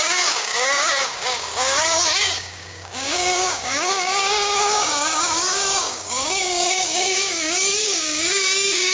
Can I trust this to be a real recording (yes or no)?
no